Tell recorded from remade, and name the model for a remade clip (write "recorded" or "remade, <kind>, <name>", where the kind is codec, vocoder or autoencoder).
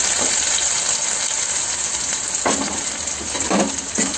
recorded